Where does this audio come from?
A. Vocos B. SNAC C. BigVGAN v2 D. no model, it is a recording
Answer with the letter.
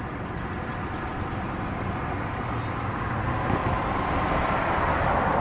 D